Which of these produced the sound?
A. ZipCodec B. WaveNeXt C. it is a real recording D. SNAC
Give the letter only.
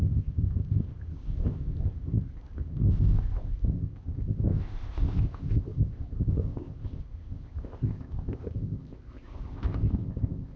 A